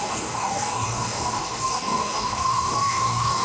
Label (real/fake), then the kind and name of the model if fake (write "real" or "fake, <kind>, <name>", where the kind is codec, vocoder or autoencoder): fake, codec, DAC